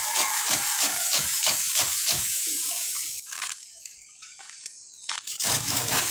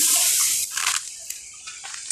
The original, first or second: second